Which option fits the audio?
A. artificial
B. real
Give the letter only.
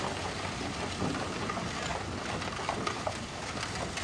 B